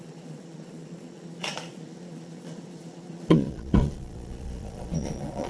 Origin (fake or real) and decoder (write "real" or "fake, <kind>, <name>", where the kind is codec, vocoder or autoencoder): fake, vocoder, Vocos